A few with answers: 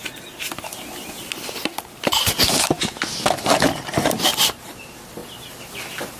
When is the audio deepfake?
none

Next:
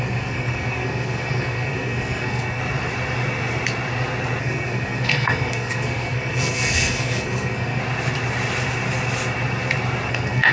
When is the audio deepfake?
0.0-2.6 (codec, SNAC); 4.4-7.8; 10.1-10.5

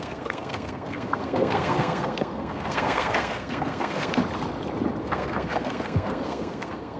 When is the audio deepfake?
0.0-4.2 (codec, SNAC); 5.0-7.0

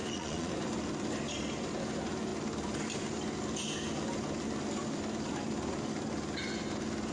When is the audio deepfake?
0.0-0.5 (vocoder, Vocos)

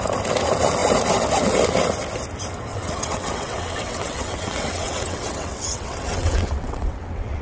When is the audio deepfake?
2.7-7.4 (vocoder, WaveNeXt)

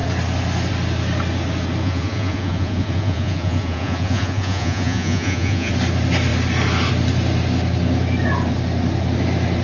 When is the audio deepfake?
1.8-5.7 (vocoder, Vocos)

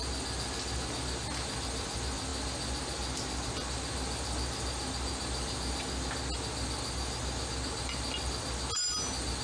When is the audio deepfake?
none

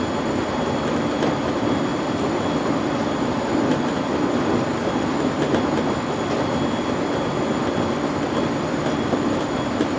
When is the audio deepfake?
none